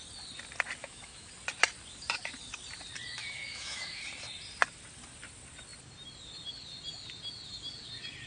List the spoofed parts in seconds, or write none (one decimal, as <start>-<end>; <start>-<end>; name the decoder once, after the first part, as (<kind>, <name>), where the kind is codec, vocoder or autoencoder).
0.8-1.3 (autoencoder, DAC-VAE); 3.2-4.0